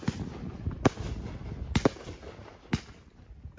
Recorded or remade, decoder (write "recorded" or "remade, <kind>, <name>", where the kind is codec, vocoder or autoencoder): recorded